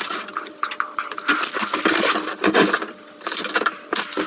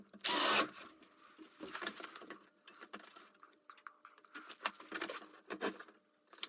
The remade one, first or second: first